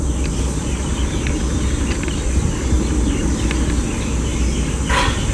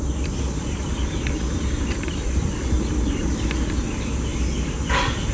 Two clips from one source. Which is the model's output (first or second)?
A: second